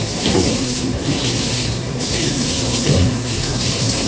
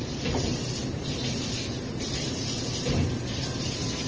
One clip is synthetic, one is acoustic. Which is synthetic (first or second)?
first